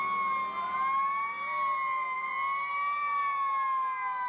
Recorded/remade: recorded